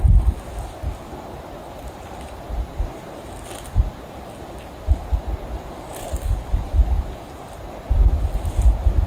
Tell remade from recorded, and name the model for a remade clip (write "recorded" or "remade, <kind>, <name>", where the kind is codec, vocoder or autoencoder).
recorded